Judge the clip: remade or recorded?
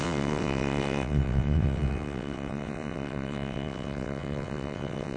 remade